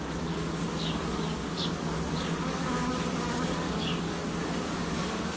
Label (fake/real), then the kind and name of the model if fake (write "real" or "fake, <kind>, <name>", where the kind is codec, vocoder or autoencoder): fake, codec, DAC